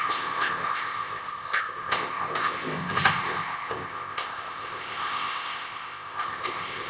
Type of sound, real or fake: fake